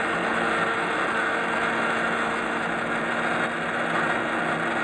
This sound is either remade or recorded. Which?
recorded